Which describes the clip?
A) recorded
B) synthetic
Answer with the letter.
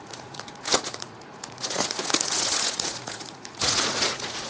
B